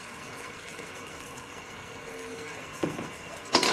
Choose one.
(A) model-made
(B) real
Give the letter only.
A